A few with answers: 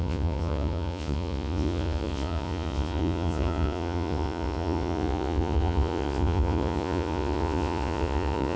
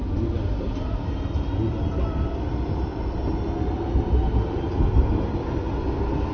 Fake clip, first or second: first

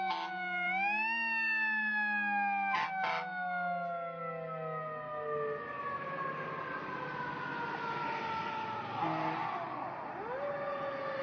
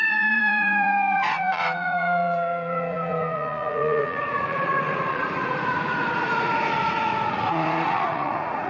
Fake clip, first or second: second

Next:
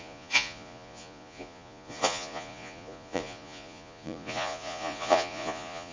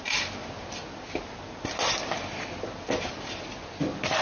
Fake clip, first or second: first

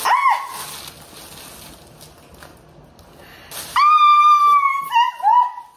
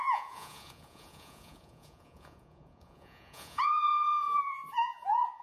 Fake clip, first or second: second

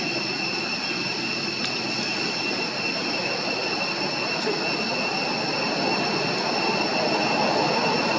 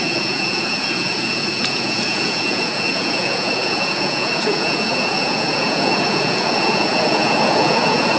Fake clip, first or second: second